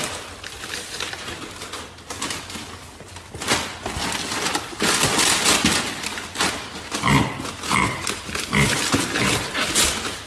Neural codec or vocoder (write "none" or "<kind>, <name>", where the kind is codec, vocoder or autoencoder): none